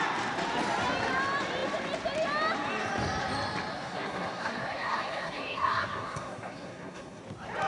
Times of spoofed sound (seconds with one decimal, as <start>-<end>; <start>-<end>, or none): 3.7-7.2